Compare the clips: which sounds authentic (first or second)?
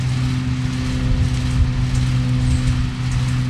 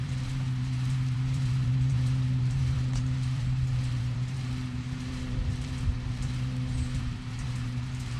first